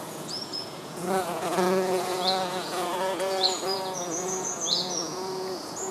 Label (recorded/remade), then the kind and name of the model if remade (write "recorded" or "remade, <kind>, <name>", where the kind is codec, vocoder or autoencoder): remade, vocoder, Vocos